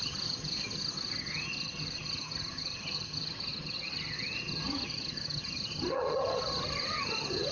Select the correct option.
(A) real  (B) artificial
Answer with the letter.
B